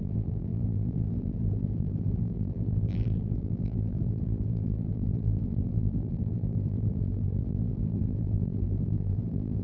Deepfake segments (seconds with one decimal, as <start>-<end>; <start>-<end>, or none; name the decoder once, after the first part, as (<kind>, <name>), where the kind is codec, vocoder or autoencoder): 0.0-9.6 (vocoder, BigVGAN v2)